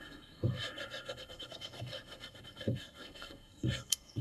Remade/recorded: remade